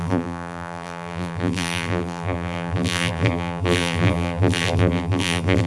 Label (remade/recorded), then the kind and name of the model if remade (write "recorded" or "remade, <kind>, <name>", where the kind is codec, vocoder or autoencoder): remade, vocoder, BigVGAN v2